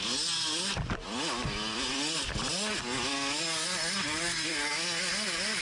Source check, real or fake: real